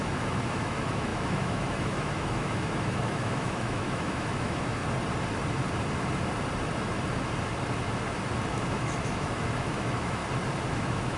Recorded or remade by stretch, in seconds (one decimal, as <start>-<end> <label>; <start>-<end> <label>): 0.0-4.8 remade; 4.8-8.5 recorded; 8.5-10.2 remade; 10.2-10.7 recorded; 10.7-11.2 remade